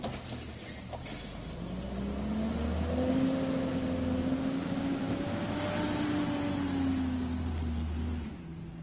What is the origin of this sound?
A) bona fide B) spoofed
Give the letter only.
A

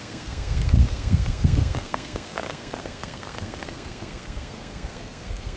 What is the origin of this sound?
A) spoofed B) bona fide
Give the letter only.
A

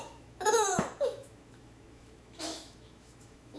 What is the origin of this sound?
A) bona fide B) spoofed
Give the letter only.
B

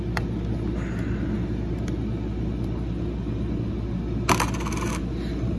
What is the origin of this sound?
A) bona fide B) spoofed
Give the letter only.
A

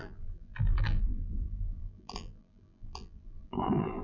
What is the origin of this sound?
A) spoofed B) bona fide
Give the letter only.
A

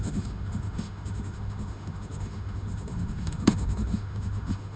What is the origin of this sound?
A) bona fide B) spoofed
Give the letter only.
B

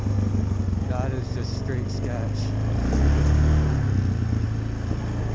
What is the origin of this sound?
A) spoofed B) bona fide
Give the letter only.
B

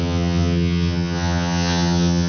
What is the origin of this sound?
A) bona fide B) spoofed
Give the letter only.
B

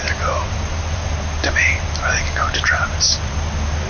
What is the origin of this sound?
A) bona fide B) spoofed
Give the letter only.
A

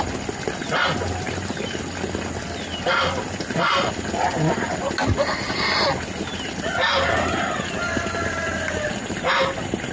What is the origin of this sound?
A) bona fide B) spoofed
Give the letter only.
A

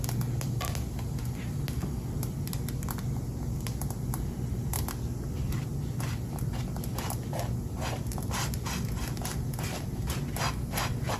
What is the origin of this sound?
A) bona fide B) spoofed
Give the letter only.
A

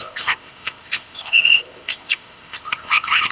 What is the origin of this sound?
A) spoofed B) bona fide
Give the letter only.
A